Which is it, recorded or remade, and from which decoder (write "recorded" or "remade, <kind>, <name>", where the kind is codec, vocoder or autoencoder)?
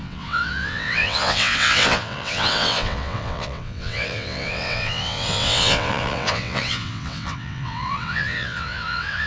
remade, vocoder, WaveNeXt